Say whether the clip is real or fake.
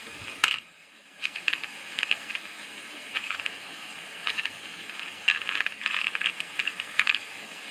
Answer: fake